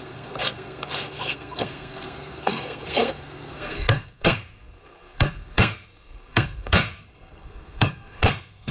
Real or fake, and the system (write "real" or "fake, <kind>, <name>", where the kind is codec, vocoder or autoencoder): fake, codec, SNAC